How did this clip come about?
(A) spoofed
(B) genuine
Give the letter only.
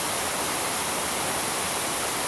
B